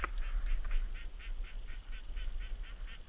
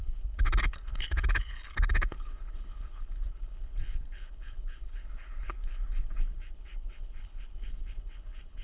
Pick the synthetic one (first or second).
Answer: second